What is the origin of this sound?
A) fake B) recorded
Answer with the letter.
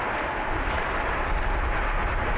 B